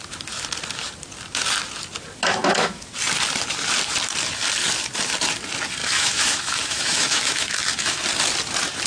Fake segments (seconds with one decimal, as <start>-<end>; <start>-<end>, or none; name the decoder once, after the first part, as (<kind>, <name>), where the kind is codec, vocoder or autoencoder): 2.4-2.9 (autoencoder, DAC-VAE); 5.8-8.0